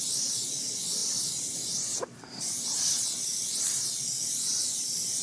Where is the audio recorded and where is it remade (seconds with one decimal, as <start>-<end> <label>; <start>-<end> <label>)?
0.0-5.2 recorded